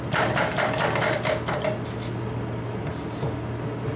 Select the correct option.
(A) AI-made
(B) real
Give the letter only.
B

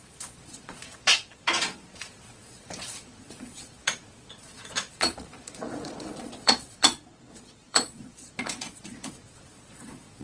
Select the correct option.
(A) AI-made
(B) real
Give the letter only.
A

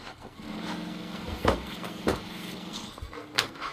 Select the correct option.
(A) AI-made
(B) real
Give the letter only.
A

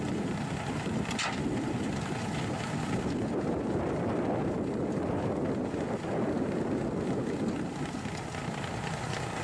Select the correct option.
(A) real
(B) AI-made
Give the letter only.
A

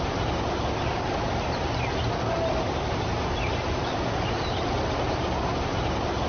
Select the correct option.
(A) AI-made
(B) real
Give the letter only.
B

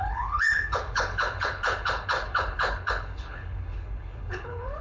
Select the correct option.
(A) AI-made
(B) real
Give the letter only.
A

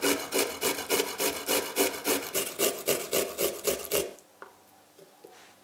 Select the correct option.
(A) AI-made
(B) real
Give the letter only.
B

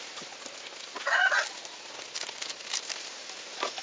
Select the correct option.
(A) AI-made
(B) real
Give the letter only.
B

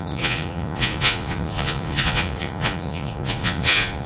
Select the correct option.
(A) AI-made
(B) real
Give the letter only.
A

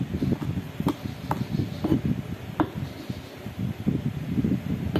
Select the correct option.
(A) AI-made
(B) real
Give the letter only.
B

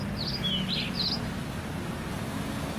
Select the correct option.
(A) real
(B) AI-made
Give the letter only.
A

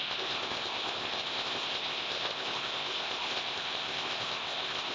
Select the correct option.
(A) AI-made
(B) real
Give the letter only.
A